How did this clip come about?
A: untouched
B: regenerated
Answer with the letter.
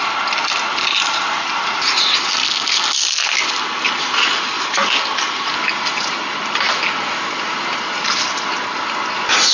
A